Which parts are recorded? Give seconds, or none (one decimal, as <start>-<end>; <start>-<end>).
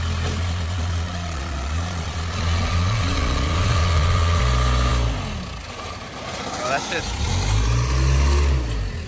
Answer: 0.0-0.4; 4.4-9.1